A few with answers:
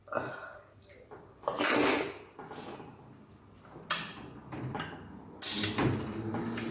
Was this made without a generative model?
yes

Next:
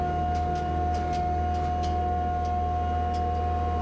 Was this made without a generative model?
yes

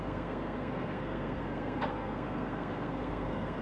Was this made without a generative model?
no